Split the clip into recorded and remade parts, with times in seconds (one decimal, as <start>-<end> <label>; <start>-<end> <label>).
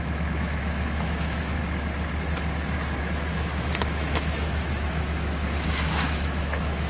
0.0-1.6 remade; 1.6-3.0 recorded; 3.0-6.9 remade